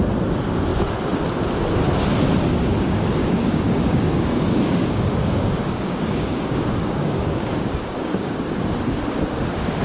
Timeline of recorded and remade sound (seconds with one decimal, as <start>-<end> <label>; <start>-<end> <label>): 0.0-3.2 recorded; 3.2-8.5 remade; 8.5-9.8 recorded